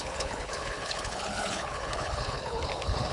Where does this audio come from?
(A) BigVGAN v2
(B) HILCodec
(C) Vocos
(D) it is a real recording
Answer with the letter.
B